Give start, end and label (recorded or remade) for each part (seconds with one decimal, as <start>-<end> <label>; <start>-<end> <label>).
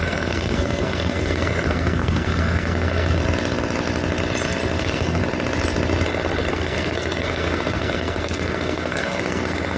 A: 0.0-3.2 remade; 3.2-4.8 recorded; 4.8-5.2 remade; 5.2-6.5 recorded; 6.5-9.8 remade